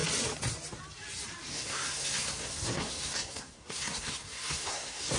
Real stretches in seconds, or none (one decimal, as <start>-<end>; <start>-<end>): 0.0-1.5